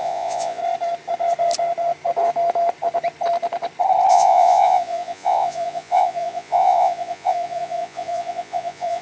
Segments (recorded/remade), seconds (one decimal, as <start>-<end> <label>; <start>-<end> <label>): 0.0-0.6 remade; 0.6-4.1 recorded; 4.1-9.0 remade